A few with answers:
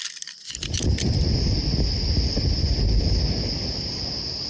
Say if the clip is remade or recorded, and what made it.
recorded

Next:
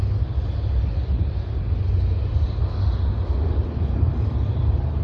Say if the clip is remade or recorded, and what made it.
recorded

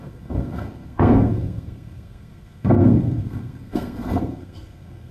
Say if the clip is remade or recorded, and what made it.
remade, codec, SNAC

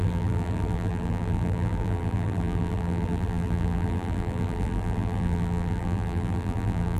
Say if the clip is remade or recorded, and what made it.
remade, vocoder, BigVGAN v2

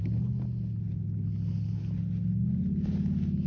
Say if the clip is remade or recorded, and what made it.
recorded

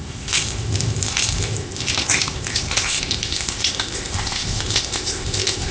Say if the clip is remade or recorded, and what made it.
remade, codec, ZipCodec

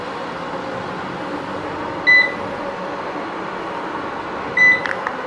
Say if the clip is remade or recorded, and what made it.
recorded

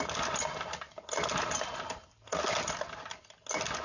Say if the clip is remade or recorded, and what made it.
recorded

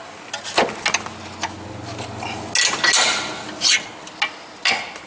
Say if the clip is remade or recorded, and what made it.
recorded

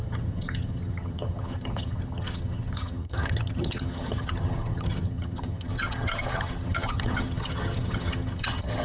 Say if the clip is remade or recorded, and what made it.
remade, vocoder, HiFi-GAN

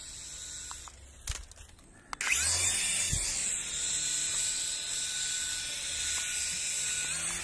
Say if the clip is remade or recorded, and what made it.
recorded